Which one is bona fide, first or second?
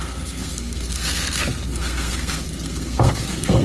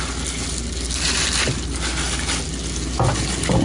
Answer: second